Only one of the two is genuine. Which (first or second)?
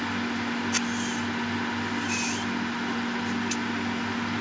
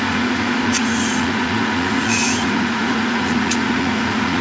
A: first